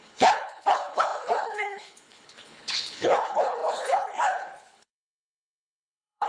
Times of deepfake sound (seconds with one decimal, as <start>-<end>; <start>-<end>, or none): 0.0-6.3